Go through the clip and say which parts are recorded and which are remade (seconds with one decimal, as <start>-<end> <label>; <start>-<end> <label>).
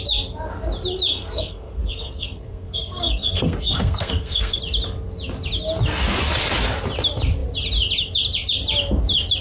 0.0-1.1 recorded; 1.1-4.6 remade; 4.6-9.4 recorded